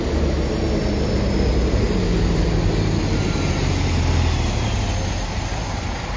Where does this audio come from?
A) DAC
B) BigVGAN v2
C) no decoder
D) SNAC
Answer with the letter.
C